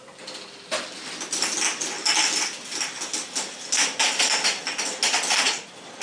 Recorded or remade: recorded